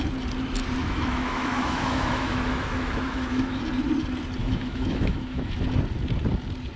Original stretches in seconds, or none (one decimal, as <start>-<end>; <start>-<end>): 0.0-0.8; 3.6-4.4; 5.5-6.8